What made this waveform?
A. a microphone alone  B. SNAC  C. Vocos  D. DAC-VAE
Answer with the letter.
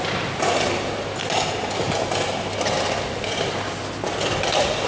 A